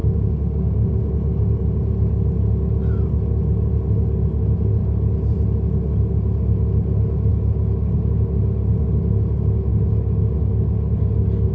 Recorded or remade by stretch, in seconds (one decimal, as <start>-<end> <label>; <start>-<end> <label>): 0.0-1.0 remade; 1.0-11.5 recorded